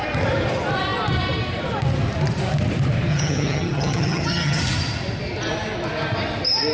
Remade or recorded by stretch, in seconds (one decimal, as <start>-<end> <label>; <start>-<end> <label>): 0.0-3.1 recorded; 3.1-4.6 remade; 4.6-6.7 recorded